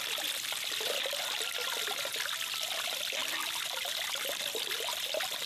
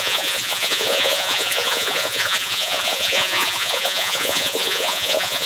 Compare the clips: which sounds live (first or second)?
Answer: first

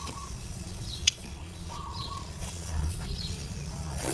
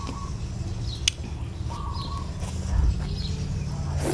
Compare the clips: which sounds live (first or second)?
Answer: second